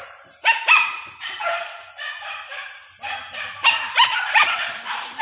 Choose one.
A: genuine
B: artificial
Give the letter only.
B